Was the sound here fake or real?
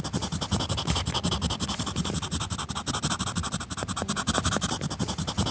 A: real